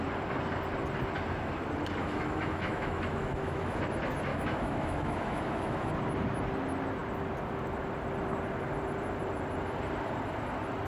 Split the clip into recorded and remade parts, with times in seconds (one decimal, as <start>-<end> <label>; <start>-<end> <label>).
0.0-2.0 recorded; 2.0-3.8 remade; 3.8-4.3 recorded; 4.3-5.9 remade; 5.9-10.9 recorded